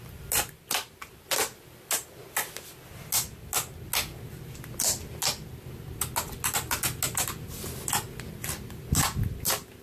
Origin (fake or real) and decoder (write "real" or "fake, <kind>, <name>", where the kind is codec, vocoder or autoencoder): real